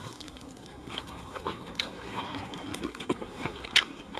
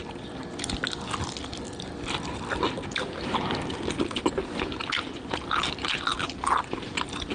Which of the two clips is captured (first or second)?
second